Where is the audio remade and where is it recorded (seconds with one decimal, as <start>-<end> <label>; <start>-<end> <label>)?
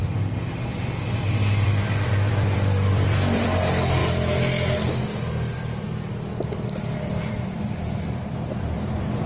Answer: 0.0-4.0 remade; 4.0-6.4 recorded; 6.4-9.3 remade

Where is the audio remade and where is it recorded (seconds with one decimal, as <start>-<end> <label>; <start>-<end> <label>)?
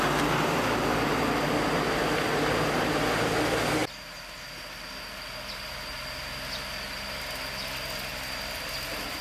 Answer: 0.0-8.1 recorded; 8.1-9.2 remade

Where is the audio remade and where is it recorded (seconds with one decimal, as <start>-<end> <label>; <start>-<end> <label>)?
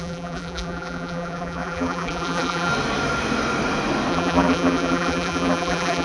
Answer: 0.0-2.7 remade; 2.7-4.1 recorded; 4.1-6.0 remade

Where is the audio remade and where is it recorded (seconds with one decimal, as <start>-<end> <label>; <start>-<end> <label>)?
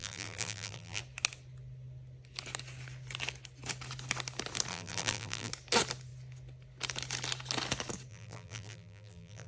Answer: 0.0-1.0 remade; 1.0-4.7 recorded; 4.7-5.5 remade; 5.5-8.1 recorded; 8.1-9.5 remade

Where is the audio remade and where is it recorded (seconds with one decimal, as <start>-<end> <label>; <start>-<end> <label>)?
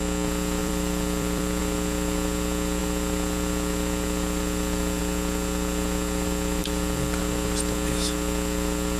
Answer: 0.0-0.6 recorded; 0.6-1.6 remade; 1.6-6.6 recorded; 6.6-7.2 remade; 7.2-9.0 recorded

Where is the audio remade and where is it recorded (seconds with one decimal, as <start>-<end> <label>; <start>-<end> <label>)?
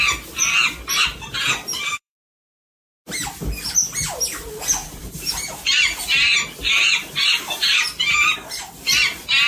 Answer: 0.0-1.7 recorded; 1.7-2.9 remade; 2.9-4.8 recorded; 4.8-8.7 remade; 8.7-9.5 recorded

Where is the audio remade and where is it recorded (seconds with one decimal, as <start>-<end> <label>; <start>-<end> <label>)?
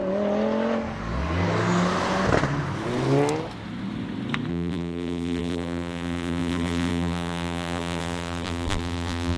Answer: 0.0-4.5 recorded; 4.5-9.4 remade